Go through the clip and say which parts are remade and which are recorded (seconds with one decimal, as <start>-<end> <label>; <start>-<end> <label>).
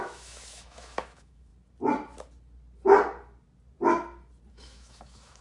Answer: 0.0-1.5 remade; 1.5-4.5 recorded; 4.5-5.4 remade